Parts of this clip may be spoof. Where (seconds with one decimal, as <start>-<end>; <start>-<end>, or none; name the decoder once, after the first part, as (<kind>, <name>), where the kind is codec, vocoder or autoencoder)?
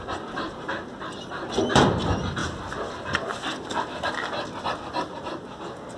none